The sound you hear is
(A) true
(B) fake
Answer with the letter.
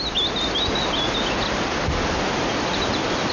A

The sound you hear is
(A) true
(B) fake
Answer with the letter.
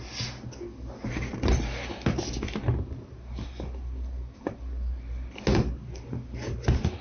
A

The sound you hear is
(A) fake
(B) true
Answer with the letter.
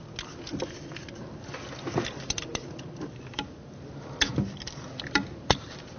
B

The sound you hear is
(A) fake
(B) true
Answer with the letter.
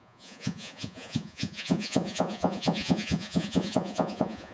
A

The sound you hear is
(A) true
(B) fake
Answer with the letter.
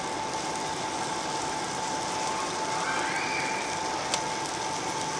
A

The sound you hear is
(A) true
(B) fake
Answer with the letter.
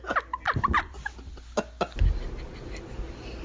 A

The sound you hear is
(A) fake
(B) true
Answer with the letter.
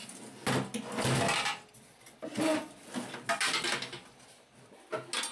B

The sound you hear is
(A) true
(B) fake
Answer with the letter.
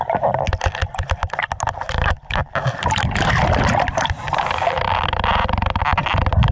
A